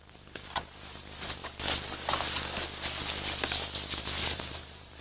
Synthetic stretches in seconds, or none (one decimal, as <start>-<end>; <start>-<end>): 0.0-1.4; 4.0-5.0